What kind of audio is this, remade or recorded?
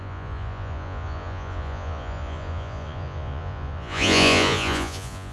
remade